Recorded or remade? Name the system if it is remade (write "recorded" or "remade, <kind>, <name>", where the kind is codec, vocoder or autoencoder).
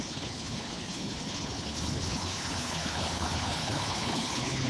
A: remade, codec, HILCodec